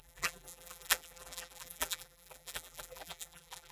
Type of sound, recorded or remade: remade